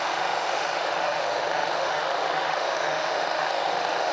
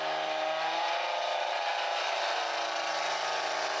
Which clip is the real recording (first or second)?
second